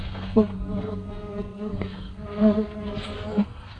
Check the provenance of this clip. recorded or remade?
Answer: remade